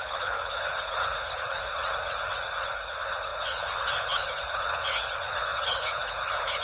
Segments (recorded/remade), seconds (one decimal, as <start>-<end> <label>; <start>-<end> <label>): 0.0-1.7 remade; 1.7-2.7 recorded; 2.7-6.6 remade